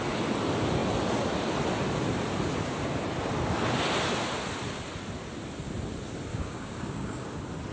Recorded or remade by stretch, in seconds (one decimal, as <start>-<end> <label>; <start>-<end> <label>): 0.0-6.3 recorded; 6.3-7.3 remade; 7.3-7.7 recorded